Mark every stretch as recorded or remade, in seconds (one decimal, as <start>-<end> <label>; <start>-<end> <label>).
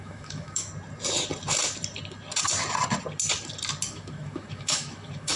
0.0-0.7 remade; 0.7-3.9 recorded; 3.9-5.4 remade